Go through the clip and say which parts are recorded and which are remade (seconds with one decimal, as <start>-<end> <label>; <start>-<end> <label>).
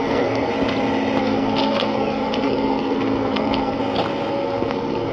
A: 0.0-0.5 remade; 0.5-1.2 recorded; 1.2-3.8 remade; 3.8-4.3 recorded; 4.3-5.1 remade